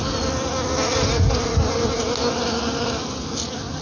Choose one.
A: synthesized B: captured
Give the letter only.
B